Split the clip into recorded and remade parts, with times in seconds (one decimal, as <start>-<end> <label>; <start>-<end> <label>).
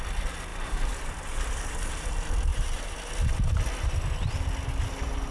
0.0-0.5 recorded; 0.5-1.9 remade; 1.9-2.5 recorded; 2.5-3.1 remade; 3.1-5.3 recorded